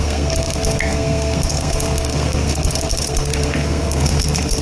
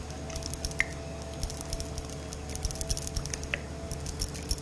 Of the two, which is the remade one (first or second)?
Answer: first